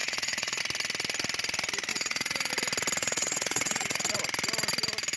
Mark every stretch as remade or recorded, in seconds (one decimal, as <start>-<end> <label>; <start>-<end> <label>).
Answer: 0.0-0.6 remade; 0.6-1.9 recorded; 1.9-2.5 remade; 2.5-3.0 recorded; 3.0-4.0 remade; 4.0-5.2 recorded